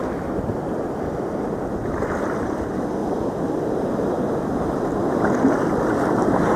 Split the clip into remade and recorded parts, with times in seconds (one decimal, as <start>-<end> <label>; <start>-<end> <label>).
0.0-3.0 recorded; 3.0-3.9 remade; 3.9-6.6 recorded